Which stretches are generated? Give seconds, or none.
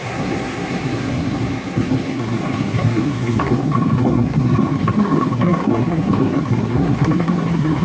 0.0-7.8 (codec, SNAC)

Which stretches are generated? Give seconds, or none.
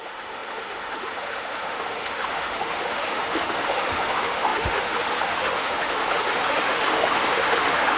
0.0-8.0 (autoencoder, DAC-VAE)